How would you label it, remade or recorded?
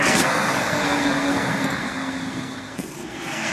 remade